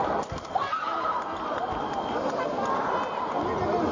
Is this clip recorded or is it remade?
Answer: remade